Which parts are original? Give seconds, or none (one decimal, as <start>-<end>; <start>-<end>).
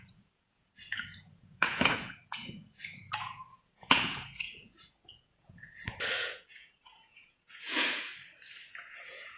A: 8.1-8.7